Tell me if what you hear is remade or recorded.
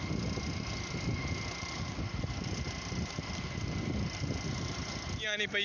recorded